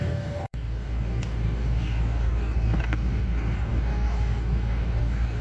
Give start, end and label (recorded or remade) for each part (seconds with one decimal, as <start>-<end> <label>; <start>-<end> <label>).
0.0-5.4 remade

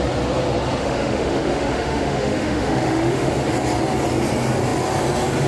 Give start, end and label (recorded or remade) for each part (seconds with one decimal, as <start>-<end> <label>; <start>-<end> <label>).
0.0-0.8 recorded; 0.8-3.3 remade; 3.3-5.5 recorded

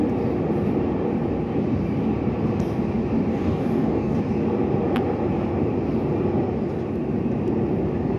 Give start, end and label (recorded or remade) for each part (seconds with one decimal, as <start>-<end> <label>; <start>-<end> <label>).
0.0-3.3 recorded; 3.3-4.2 remade; 4.2-8.2 recorded

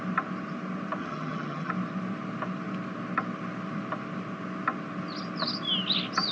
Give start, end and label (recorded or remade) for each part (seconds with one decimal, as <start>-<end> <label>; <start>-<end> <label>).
0.0-1.0 recorded; 1.0-1.7 remade; 1.7-6.3 recorded